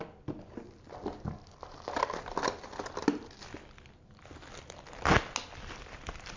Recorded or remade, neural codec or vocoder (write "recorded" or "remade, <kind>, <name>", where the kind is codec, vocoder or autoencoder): recorded